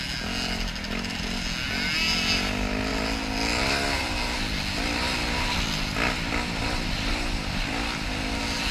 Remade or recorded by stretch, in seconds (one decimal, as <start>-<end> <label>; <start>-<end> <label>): 0.0-8.7 recorded